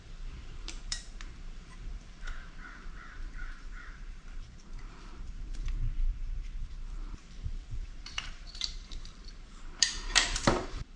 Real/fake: fake